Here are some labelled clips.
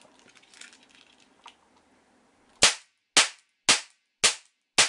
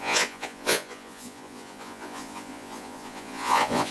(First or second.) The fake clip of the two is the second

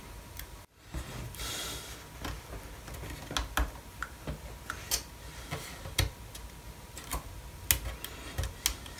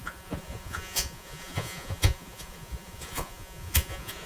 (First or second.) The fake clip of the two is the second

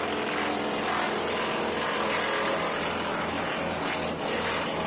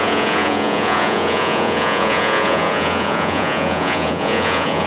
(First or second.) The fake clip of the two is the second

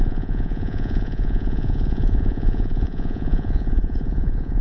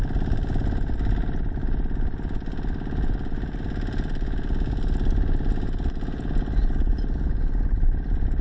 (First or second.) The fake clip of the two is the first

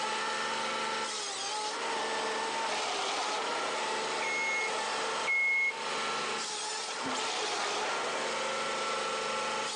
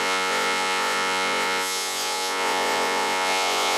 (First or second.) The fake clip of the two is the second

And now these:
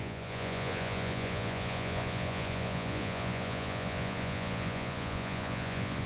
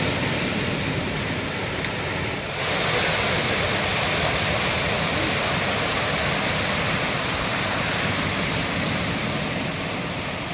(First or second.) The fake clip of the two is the first